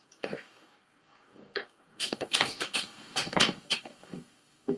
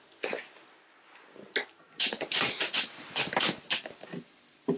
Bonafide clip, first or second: second